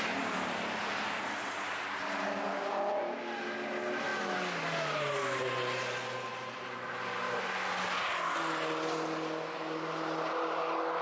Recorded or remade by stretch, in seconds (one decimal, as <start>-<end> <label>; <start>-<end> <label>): 0.0-11.0 recorded